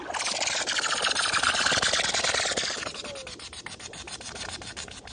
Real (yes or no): yes